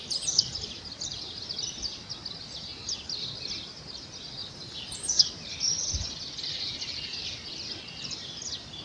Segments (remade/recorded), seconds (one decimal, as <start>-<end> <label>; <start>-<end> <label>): 0.0-4.4 recorded; 4.4-5.8 remade; 5.8-8.8 recorded

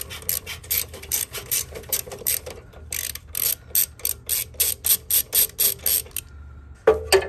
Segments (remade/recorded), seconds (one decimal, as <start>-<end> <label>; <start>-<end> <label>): 0.0-0.6 recorded; 0.6-2.4 remade; 2.4-7.3 recorded